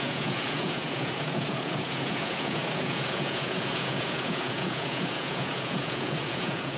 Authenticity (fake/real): fake